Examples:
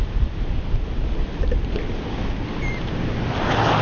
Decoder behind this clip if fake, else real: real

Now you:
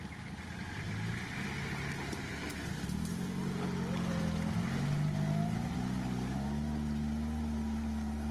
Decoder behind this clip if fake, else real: real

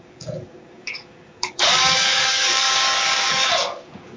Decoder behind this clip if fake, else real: fake, codec, DAC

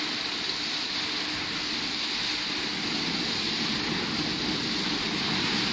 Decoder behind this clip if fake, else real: fake, vocoder, BigVGAN v2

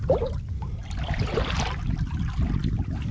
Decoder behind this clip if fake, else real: real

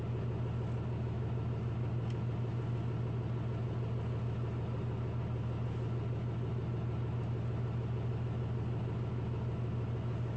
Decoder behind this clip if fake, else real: real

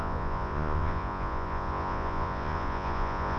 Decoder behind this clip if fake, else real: fake, vocoder, Vocos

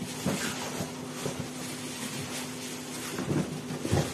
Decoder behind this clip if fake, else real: real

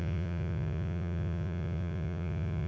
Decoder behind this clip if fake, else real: fake, vocoder, Vocos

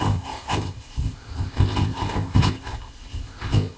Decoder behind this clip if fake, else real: fake, codec, ZipCodec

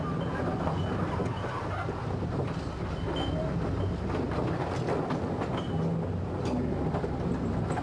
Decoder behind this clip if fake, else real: real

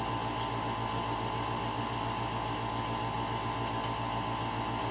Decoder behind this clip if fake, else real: real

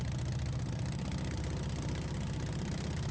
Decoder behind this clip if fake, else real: real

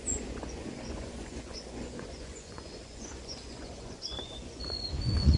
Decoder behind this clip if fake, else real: fake, vocoder, Vocos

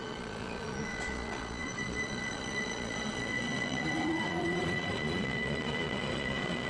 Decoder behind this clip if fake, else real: fake, vocoder, Vocos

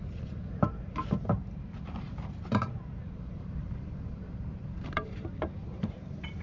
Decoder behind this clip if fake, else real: fake, vocoder, BigVGAN v2